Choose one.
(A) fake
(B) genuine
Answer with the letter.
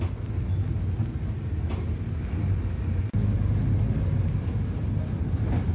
B